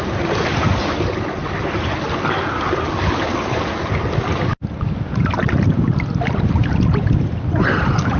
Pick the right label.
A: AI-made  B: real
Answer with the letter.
B